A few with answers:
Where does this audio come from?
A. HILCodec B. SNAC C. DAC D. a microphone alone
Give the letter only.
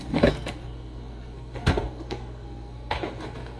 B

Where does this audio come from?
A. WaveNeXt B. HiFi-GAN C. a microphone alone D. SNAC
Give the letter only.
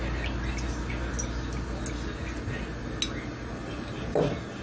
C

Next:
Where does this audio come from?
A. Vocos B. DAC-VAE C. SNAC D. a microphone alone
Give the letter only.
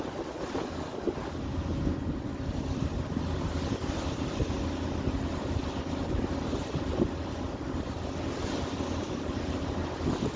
D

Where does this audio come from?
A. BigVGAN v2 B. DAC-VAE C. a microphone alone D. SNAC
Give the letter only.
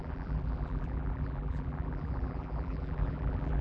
A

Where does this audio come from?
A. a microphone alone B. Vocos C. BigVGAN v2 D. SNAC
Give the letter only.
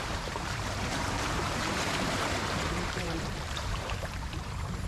C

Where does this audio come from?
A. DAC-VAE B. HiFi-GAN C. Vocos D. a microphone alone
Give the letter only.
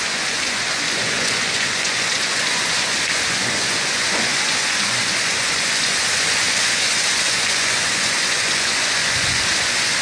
C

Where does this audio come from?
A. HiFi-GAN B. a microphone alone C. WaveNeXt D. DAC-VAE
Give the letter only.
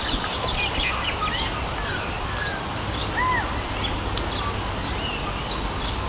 B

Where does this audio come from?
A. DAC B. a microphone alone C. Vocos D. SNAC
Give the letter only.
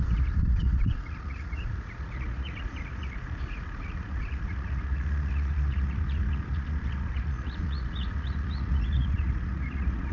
C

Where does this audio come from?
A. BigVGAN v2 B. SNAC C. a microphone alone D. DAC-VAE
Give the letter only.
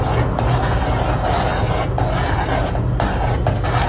C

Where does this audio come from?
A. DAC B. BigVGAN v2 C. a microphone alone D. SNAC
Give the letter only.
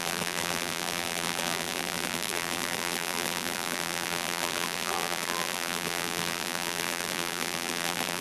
B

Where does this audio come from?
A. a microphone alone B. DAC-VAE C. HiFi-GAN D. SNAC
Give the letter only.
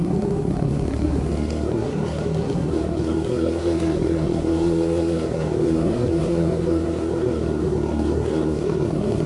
D